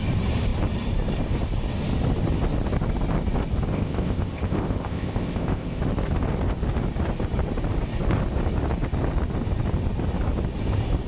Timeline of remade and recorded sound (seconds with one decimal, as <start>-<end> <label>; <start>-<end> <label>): 0.0-3.7 recorded; 3.7-5.8 remade; 5.8-11.1 recorded